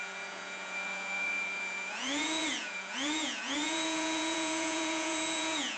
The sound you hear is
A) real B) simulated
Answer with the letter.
B